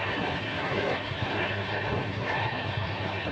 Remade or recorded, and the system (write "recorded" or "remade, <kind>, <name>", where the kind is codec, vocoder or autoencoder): remade, codec, SNAC